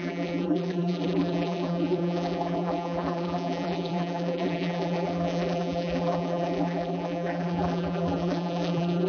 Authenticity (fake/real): fake